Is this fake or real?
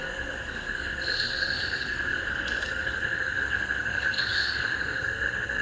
fake